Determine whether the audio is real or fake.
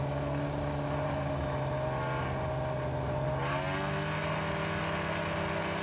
real